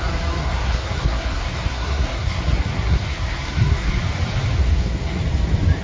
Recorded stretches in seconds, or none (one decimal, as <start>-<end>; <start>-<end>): 0.0-0.4; 3.9-4.6; 5.2-5.8